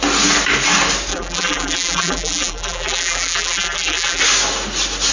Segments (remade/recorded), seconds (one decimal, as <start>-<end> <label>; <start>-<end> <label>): 0.0-1.1 recorded; 1.1-4.2 remade; 4.2-5.1 recorded